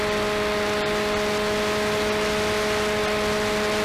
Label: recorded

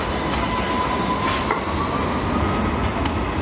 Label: recorded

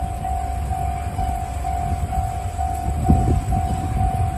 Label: recorded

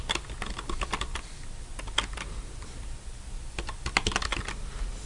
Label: recorded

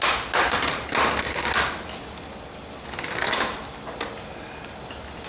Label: recorded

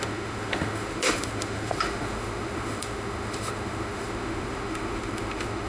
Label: remade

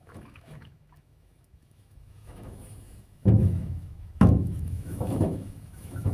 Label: remade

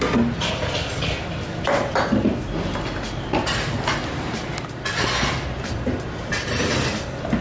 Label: recorded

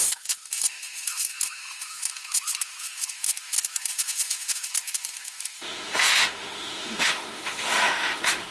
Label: remade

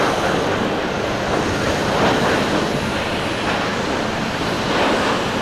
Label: recorded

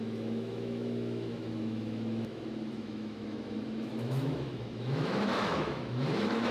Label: remade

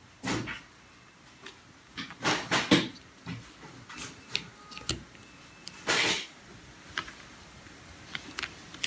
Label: recorded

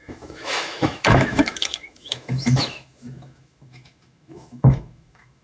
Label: remade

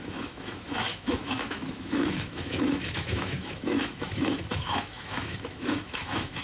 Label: remade